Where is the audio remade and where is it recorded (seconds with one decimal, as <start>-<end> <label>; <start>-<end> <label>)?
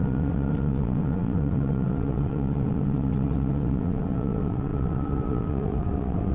0.0-6.3 remade